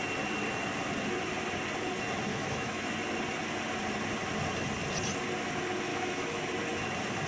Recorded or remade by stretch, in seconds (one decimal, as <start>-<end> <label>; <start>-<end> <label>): 0.0-2.3 recorded; 2.3-2.9 remade; 2.9-5.9 recorded; 5.9-6.5 remade; 6.5-7.3 recorded